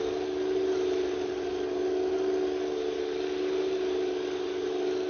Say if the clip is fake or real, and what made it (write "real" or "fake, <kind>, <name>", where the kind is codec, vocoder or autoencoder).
real